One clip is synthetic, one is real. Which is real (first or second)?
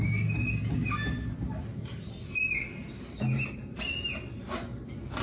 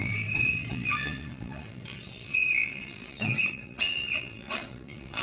first